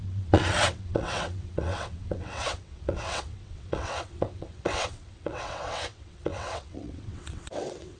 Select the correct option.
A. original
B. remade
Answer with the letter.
B